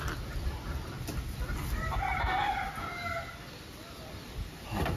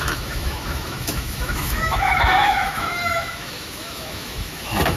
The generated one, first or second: second